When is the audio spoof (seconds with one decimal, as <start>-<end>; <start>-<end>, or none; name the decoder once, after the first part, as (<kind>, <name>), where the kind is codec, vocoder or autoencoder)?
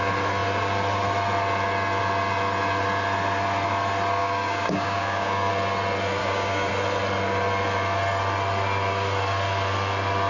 4.2-5.5 (codec, DAC); 6.2-6.7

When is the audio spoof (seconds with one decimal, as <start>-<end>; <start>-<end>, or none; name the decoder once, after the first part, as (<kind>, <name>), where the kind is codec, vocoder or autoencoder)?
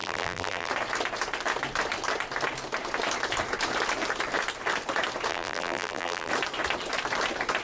0.0-0.7 (vocoder, BigVGAN v2); 5.3-6.3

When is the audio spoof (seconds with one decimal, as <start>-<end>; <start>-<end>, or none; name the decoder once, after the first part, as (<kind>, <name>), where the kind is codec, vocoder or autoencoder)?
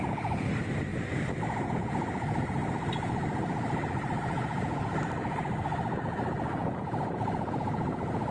6.6-7.5 (vocoder, BigVGAN v2)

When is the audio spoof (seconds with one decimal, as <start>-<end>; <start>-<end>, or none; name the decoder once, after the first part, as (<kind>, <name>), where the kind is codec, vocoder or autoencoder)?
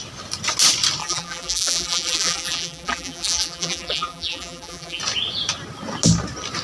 1.0-5.0 (vocoder, BigVGAN v2)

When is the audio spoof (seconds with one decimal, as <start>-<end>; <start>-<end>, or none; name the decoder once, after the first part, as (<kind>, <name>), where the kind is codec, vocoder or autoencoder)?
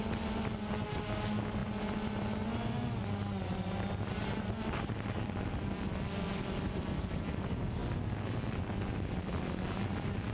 none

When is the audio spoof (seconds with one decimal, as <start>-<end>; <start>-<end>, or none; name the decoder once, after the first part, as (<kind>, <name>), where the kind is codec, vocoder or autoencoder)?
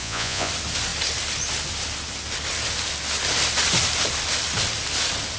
0.0-0.5 (vocoder, Vocos)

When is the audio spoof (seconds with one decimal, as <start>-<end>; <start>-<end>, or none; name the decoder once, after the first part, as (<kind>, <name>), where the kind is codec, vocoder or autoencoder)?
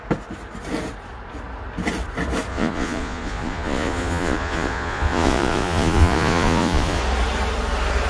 2.5-7.0 (vocoder, Vocos)